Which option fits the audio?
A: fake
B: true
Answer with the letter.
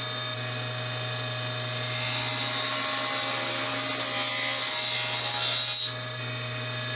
B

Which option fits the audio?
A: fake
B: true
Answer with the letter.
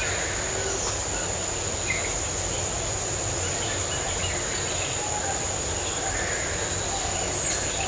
B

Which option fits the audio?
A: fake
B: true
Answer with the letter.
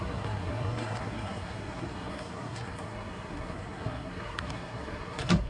A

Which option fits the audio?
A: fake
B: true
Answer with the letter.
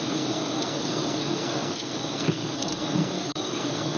A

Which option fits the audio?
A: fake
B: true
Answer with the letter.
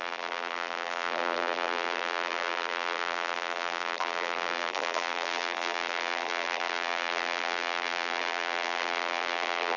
A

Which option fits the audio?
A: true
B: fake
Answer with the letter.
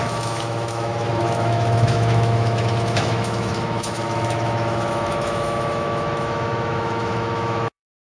B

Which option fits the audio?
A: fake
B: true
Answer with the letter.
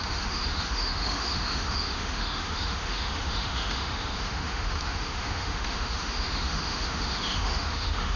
A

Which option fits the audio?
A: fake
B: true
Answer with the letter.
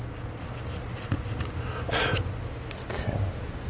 B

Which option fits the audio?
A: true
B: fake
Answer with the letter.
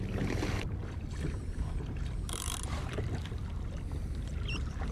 B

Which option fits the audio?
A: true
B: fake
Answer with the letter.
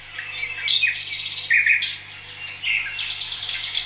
A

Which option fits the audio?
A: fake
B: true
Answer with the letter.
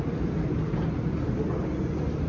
B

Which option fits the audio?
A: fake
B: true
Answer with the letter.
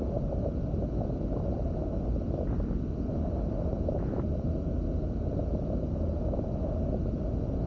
B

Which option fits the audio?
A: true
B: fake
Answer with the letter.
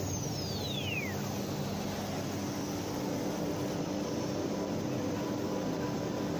A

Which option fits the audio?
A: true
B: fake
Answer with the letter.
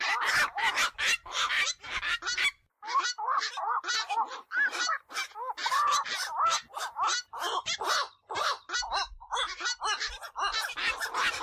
A